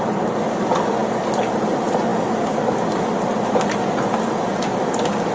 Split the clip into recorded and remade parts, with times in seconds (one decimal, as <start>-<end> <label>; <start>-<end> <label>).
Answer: 0.0-5.3 recorded